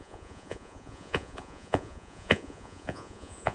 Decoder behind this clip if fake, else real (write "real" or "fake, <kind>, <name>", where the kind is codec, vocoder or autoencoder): fake, vocoder, Vocos